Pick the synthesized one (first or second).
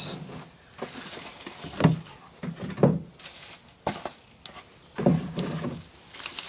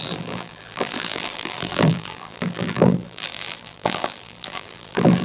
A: second